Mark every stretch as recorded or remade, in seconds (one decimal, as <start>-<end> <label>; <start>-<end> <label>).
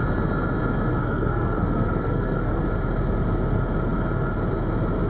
0.0-1.0 recorded; 1.0-2.6 remade; 2.6-5.1 recorded